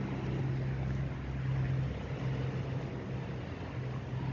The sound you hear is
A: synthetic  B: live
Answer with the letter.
B